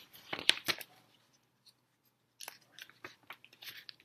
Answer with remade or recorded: remade